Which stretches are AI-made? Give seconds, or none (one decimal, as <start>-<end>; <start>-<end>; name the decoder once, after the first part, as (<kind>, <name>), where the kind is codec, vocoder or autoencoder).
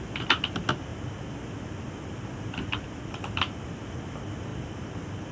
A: none